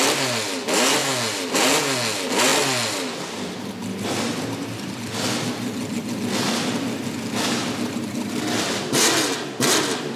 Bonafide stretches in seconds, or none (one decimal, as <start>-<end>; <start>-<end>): 0.0-10.2